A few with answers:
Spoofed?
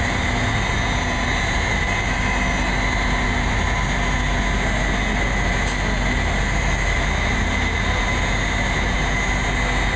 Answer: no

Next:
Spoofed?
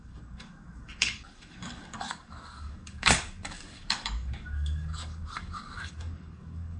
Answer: yes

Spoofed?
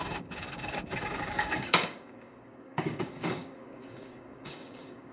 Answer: yes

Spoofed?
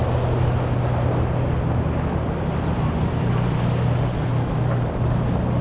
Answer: no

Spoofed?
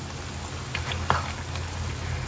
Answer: no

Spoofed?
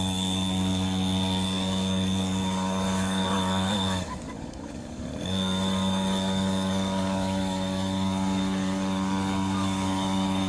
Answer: yes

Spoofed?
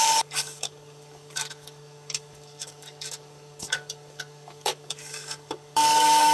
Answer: yes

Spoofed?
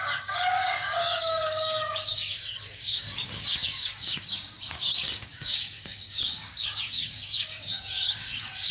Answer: yes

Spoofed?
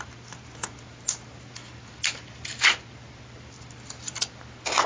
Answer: no